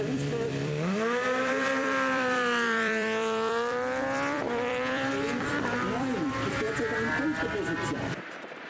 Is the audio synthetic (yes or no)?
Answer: yes